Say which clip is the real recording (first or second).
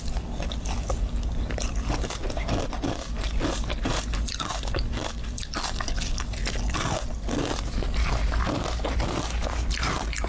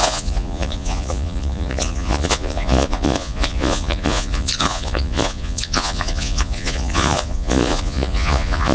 first